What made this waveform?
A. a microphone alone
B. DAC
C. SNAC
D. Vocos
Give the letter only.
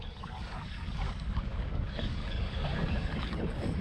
B